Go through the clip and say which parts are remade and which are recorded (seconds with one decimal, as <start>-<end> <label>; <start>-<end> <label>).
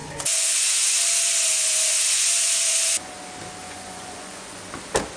0.0-3.1 remade; 3.1-3.6 recorded; 3.6-4.6 remade; 4.6-5.2 recorded